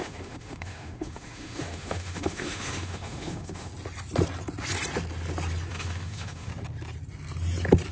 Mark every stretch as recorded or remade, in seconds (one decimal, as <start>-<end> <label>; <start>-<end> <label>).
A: 0.0-3.7 remade; 3.7-5.7 recorded; 5.7-6.5 remade; 6.5-7.9 recorded